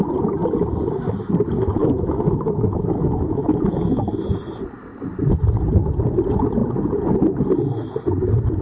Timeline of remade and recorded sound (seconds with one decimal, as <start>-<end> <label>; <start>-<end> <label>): 0.0-1.8 recorded; 1.8-4.0 remade; 4.0-8.6 recorded